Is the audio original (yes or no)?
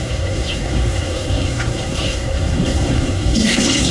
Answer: no